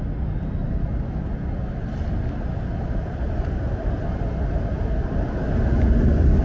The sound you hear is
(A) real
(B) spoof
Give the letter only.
A